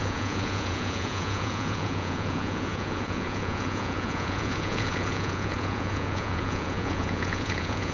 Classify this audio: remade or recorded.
remade